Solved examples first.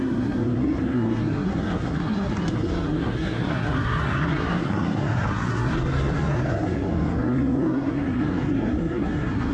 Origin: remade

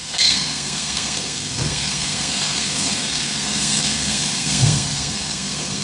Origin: remade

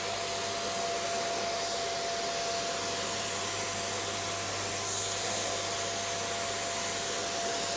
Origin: recorded